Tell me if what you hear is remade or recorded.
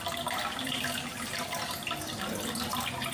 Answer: recorded